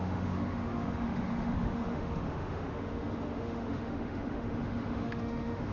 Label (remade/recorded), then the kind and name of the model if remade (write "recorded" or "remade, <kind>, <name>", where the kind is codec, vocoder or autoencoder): remade, autoencoder, DAC-VAE